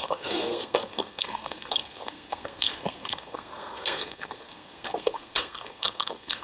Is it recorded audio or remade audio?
remade